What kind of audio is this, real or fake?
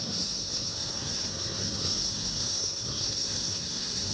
fake